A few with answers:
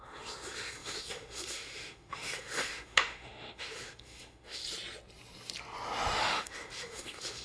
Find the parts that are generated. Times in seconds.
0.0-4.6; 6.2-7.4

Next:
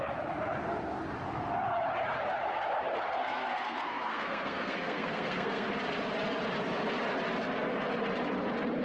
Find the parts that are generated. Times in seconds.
3.2-5.7

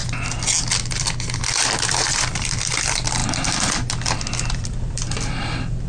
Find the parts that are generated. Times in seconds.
2.1-3.2; 4.3-5.9

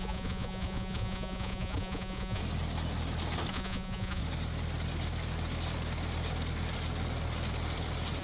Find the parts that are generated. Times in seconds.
0.0-2.4; 3.5-4.2

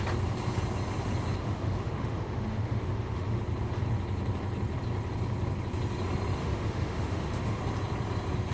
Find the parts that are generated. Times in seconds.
1.4-3.4; 6.4-7.6

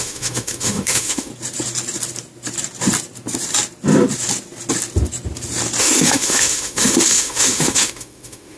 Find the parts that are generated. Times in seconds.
0.0-1.3; 5.8-8.6